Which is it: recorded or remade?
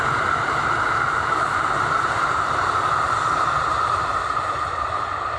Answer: remade